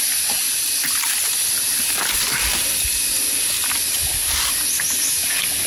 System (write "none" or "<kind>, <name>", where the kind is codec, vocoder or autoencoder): none